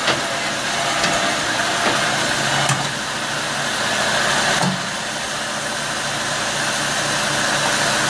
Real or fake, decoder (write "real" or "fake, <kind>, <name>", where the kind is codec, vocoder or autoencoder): real